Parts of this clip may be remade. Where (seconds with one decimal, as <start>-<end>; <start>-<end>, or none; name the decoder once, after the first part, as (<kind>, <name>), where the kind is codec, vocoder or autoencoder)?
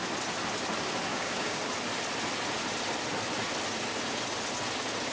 1.1-1.6 (codec, DAC)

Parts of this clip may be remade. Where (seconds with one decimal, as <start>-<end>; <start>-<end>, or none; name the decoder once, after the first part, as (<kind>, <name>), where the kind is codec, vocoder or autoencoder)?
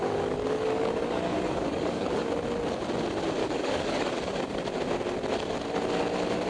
0.0-2.3 (codec, DAC); 3.4-4.6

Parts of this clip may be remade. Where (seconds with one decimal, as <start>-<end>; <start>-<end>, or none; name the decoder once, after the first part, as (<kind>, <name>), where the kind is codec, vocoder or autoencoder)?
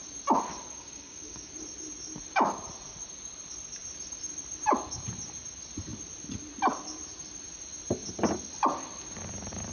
0.7-1.5 (codec, DAC)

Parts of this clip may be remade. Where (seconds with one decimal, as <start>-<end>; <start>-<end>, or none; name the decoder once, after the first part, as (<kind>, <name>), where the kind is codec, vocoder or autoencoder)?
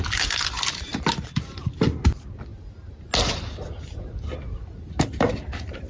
none